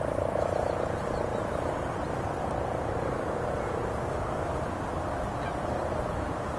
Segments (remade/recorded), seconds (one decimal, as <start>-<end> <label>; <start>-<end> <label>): 0.0-6.6 recorded